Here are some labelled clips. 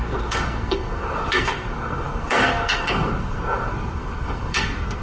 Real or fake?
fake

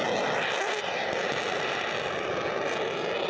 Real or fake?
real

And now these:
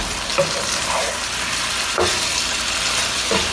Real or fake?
real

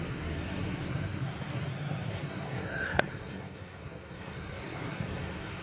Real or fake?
fake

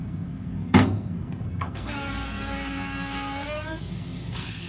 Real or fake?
fake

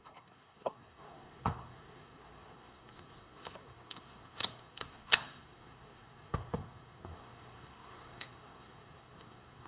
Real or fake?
fake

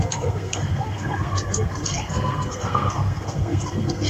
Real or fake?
fake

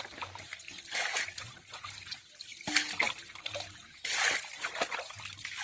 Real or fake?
real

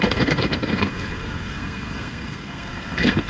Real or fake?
fake